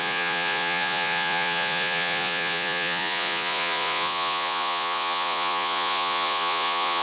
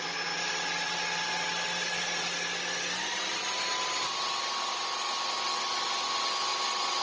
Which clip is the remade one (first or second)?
first